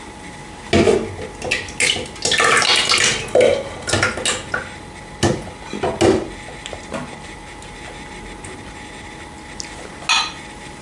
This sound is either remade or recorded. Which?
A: recorded